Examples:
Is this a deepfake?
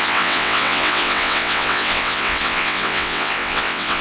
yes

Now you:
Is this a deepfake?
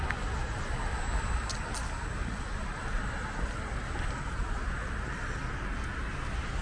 no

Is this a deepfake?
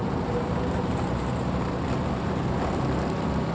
no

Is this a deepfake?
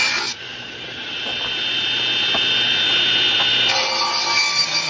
no